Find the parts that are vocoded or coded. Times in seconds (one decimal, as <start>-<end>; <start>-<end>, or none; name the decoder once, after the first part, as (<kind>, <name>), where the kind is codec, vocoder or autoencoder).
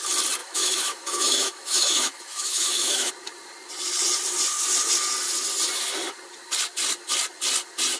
0.4-3.1 (autoencoder, DAC-VAE)